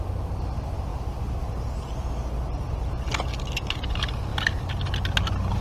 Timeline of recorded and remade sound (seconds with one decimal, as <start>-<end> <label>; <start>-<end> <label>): 0.0-0.9 recorded; 0.9-2.7 remade; 2.7-5.6 recorded